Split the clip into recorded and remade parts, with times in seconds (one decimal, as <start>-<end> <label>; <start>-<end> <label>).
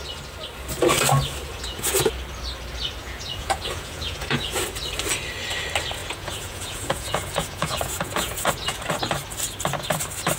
0.0-1.5 recorded; 1.5-2.1 remade; 2.1-3.0 recorded; 3.0-4.6 remade; 4.6-6.0 recorded; 6.0-8.9 remade; 8.9-10.4 recorded